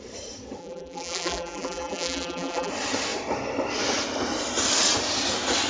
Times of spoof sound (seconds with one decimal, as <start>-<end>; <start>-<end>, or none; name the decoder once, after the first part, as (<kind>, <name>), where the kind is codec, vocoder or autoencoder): 0.6-2.7 (vocoder, BigVGAN v2)